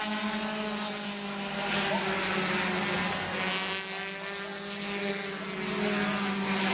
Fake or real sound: real